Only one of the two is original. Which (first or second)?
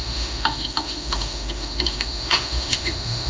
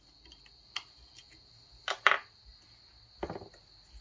second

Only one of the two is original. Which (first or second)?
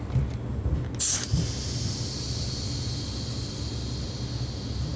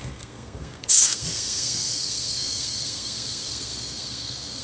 first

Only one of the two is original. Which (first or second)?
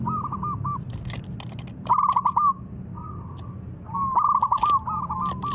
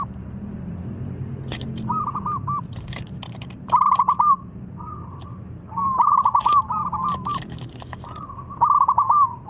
first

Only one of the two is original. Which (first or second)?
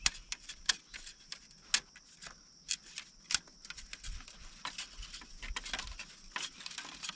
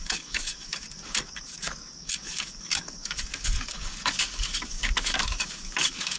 first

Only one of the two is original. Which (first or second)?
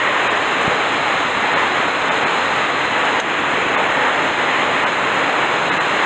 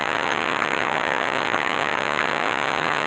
first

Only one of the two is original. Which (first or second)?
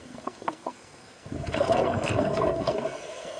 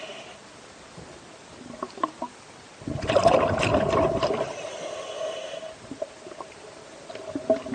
second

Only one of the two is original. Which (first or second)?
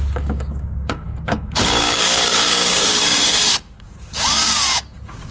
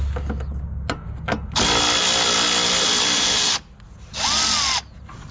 second